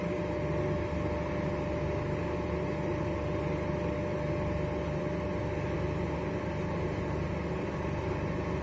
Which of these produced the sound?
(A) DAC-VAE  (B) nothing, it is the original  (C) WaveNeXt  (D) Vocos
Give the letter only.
B